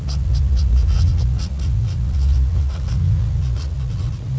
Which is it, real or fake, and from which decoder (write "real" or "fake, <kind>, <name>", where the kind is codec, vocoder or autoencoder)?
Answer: fake, vocoder, Vocos